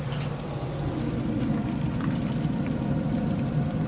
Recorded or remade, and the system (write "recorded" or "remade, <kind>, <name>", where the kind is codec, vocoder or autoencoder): recorded